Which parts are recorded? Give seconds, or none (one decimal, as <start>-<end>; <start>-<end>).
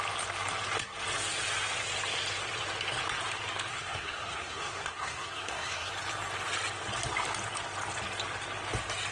0.0-3.7; 5.9-9.1